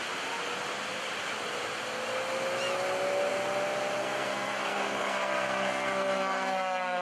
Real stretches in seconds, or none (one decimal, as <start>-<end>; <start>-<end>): 0.0-4.0